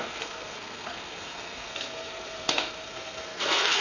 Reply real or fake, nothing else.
fake